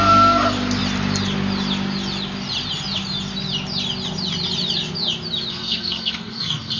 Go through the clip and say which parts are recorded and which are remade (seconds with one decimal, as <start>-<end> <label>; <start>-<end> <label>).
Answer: 0.0-5.5 recorded; 5.5-6.8 remade